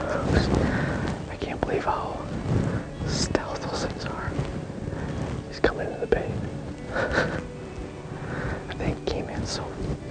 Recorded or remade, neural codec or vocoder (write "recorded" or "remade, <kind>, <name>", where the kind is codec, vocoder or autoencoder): recorded